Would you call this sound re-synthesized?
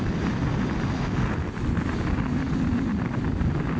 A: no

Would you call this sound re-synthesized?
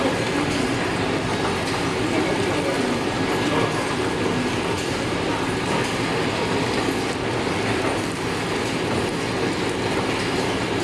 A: no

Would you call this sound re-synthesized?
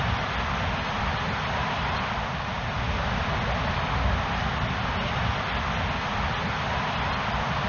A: no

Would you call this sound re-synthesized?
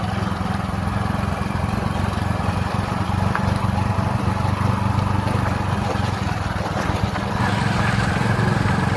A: no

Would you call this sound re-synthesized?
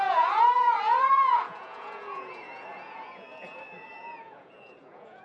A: yes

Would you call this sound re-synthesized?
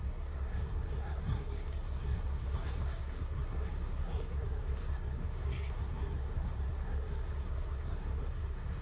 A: yes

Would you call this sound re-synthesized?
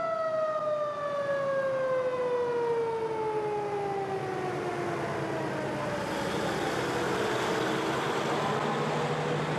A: no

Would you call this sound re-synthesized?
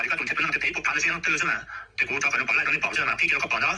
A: no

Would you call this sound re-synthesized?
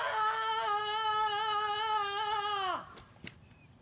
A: no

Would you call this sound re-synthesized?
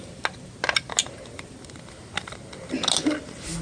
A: no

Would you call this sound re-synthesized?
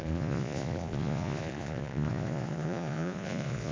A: yes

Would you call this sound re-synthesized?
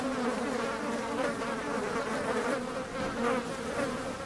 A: no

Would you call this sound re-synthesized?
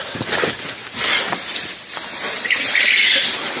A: no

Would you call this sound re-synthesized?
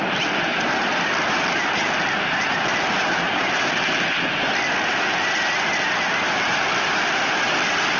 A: no